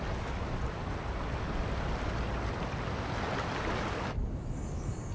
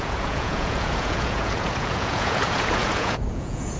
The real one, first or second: first